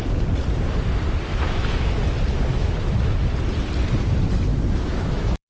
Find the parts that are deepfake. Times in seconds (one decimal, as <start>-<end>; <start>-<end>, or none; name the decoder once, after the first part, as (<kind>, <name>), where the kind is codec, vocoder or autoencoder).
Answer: 1.3-2.0 (autoencoder, DAC-VAE); 2.5-3.3; 4.5-5.5